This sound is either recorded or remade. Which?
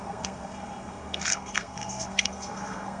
remade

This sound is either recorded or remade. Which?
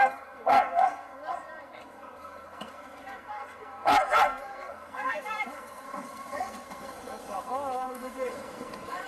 remade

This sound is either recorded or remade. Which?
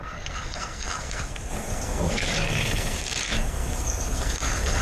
remade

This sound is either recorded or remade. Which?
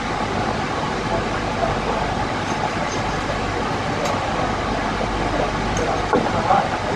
recorded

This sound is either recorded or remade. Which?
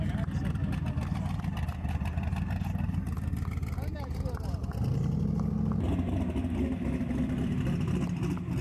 recorded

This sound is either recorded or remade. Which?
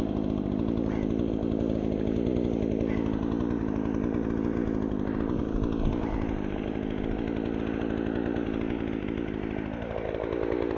recorded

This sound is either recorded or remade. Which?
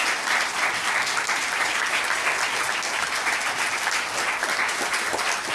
recorded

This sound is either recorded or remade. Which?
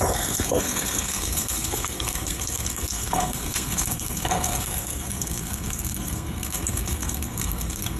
remade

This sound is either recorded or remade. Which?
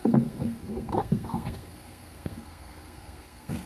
remade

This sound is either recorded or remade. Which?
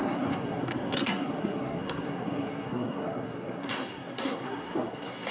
remade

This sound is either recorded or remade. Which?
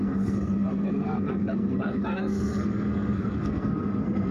remade